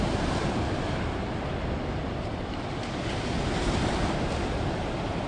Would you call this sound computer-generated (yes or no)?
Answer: no